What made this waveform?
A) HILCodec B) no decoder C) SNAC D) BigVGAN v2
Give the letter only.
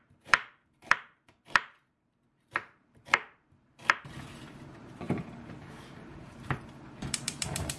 D